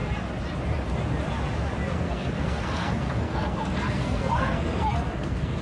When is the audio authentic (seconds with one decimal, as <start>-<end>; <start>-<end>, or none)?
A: 0.0-1.9